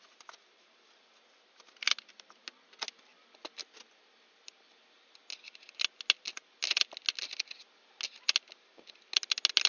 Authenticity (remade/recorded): recorded